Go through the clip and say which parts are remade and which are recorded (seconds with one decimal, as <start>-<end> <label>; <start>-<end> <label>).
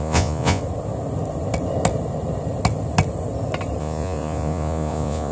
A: 0.0-0.6 remade; 0.6-3.8 recorded; 3.8-5.3 remade